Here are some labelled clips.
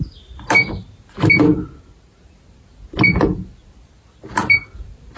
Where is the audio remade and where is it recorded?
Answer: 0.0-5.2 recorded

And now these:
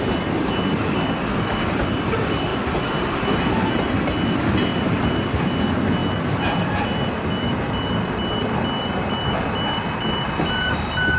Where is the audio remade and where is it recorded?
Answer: 0.0-11.2 recorded

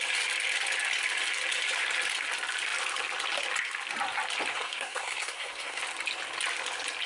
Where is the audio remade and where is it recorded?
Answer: 0.0-4.5 recorded; 4.5-5.8 remade; 5.8-7.1 recorded

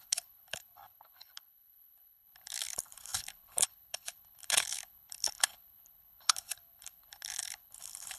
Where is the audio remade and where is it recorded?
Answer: 0.0-8.2 remade

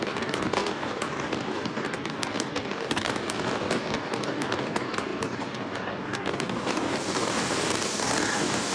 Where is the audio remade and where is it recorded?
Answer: 0.0-8.7 remade